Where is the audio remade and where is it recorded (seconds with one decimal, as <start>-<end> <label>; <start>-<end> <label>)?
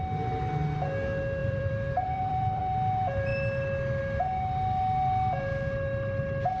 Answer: 0.0-1.4 recorded; 1.4-2.6 remade; 2.6-6.6 recorded